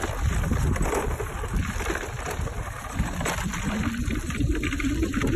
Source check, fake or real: real